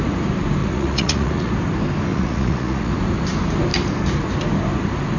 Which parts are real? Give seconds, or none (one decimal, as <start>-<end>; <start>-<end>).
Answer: 0.0-0.6; 1.5-2.1; 2.9-5.2